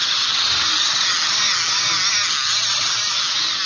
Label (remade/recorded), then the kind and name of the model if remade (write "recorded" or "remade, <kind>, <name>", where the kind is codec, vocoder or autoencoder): recorded